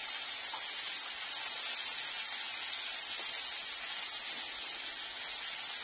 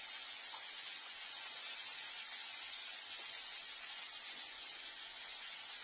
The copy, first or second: second